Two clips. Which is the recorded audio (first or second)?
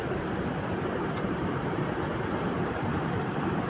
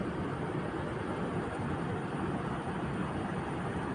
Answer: second